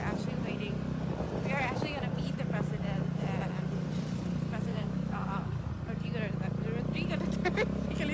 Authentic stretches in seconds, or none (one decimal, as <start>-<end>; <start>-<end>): 0.0-4.7; 5.7-8.1